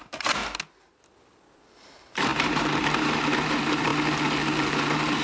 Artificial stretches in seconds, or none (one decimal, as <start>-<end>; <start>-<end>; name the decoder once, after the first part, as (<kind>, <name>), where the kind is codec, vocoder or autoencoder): 0.0-0.4 (vocoder, BigVGAN v2); 1.5-3.9; 4.7-5.2